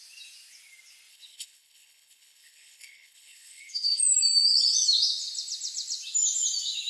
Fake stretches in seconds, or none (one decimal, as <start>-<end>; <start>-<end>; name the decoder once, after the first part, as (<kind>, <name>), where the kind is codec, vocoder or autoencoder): 1.1-4.0 (codec, HILCodec)